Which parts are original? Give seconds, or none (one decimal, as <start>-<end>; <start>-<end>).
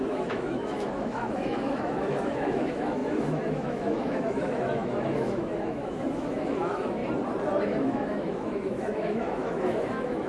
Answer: 7.0-7.6